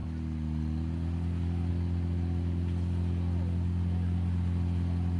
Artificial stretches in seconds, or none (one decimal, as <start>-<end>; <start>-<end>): none